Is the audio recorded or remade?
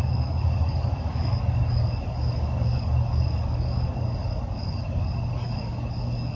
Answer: remade